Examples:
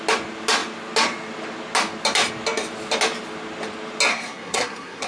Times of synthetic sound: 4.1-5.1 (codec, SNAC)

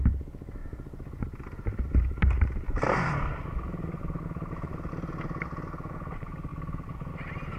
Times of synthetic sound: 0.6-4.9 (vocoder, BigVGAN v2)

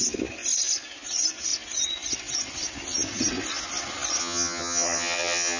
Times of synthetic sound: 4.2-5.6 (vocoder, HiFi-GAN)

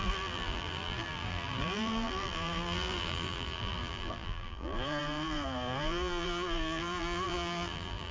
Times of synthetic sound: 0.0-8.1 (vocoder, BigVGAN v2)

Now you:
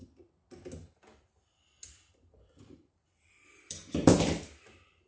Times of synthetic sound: 4.0-4.6 (vocoder, BigVGAN v2)